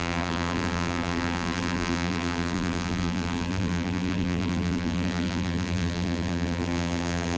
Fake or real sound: fake